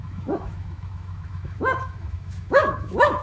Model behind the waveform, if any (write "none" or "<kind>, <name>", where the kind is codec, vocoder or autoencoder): autoencoder, DAC-VAE